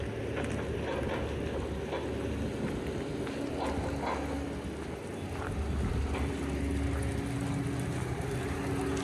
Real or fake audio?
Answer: real